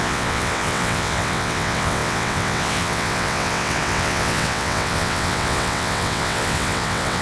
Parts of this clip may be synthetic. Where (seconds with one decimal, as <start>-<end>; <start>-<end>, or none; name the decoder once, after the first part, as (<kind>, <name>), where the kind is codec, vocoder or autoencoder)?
0.0-7.2 (vocoder, WaveNeXt)